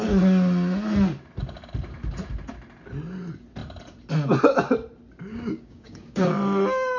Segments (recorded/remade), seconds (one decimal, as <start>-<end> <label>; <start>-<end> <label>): 0.0-5.3 recorded; 5.3-6.3 remade; 6.3-7.0 recorded